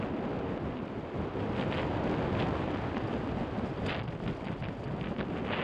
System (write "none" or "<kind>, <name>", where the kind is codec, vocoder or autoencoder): none